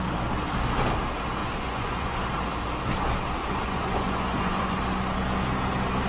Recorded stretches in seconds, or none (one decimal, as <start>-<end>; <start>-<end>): 0.0-1.4; 2.2-3.4; 4.8-6.1